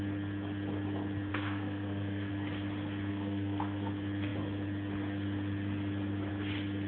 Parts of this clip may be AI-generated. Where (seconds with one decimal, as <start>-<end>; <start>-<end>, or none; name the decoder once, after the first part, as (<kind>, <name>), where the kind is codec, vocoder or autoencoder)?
1.3-2.3 (codec, SNAC); 3.1-3.9